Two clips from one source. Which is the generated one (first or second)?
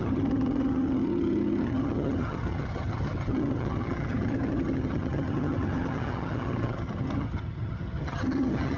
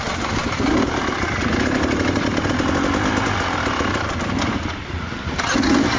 first